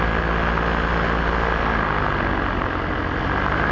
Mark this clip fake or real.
real